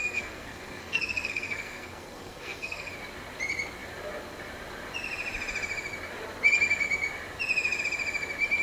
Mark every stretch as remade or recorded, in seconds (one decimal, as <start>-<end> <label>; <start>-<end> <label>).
0.0-2.9 remade; 2.9-8.6 recorded